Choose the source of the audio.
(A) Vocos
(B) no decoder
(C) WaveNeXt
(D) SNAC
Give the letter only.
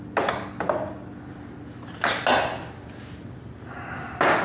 B